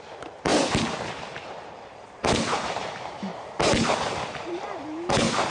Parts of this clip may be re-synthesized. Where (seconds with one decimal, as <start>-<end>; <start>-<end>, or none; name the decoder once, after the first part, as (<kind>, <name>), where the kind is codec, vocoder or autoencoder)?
0.0-0.5 (vocoder, BigVGAN v2); 1.1-3.3; 4.1-5.5